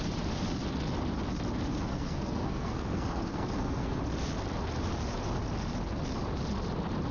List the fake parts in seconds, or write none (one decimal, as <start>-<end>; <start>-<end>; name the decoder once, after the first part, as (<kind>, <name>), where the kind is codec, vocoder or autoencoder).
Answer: 1.9-4.0 (codec, SNAC)